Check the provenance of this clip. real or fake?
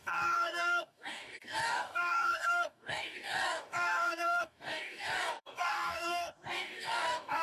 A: fake